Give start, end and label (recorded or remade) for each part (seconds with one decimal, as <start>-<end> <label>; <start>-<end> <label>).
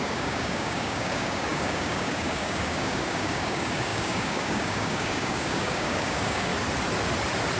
0.0-6.5 remade; 6.5-7.6 recorded